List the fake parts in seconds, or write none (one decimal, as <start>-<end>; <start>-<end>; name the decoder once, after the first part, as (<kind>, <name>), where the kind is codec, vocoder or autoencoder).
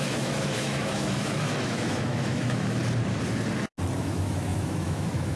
0.0-2.8 (autoencoder, DAC-VAE); 4.0-5.4